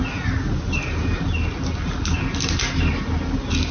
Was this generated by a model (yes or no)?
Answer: no